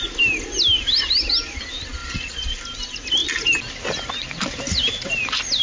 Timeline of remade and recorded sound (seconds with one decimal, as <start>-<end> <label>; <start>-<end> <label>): 0.0-2.0 recorded; 2.0-2.6 remade; 2.6-5.6 recorded